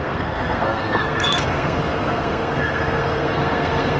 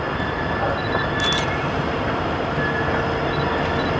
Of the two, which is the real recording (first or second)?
second